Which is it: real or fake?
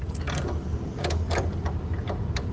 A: real